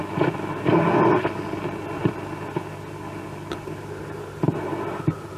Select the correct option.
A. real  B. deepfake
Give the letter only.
A